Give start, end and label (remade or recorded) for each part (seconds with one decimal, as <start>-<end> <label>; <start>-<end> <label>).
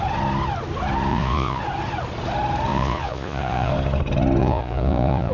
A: 0.0-1.1 recorded; 1.1-1.6 remade; 1.6-2.7 recorded; 2.7-3.7 remade; 3.7-4.4 recorded; 4.4-5.3 remade